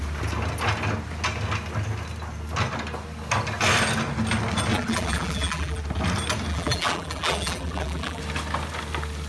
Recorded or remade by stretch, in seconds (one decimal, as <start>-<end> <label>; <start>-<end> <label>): 0.0-4.7 recorded; 4.7-5.8 remade; 5.8-6.5 recorded; 6.5-8.2 remade; 8.2-9.3 recorded